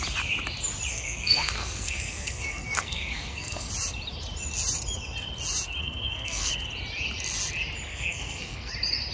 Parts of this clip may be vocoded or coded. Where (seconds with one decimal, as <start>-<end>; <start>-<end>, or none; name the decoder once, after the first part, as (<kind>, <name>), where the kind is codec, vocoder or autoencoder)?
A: 0.9-3.7 (codec, SNAC); 5.8-6.5; 7.9-8.7